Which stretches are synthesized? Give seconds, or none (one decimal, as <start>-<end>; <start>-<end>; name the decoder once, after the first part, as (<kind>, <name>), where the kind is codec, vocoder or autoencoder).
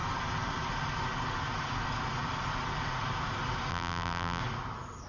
3.7-4.4 (vocoder, BigVGAN v2)